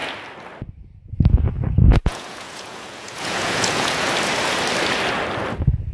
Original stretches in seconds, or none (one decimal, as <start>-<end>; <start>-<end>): 0.0-1.9; 4.1-5.9